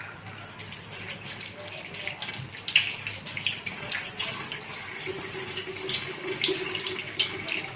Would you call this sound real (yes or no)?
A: yes